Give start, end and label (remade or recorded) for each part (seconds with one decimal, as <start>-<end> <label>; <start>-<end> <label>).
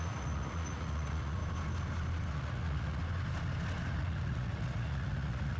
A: 0.0-1.4 remade; 1.4-2.3 recorded; 2.3-3.0 remade; 3.0-4.0 recorded; 4.0-5.6 remade